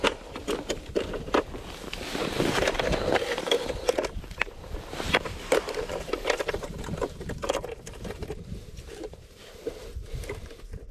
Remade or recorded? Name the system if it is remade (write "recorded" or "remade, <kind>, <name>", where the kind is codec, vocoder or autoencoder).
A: remade, vocoder, BigVGAN v2